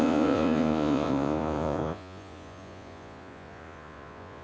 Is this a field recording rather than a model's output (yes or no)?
no